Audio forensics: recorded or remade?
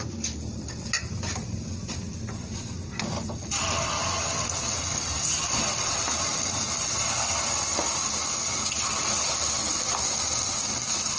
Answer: recorded